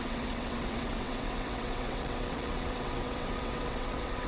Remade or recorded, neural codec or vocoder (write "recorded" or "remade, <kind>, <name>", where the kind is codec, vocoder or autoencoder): remade, vocoder, WaveNeXt